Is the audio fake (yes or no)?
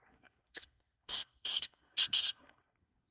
yes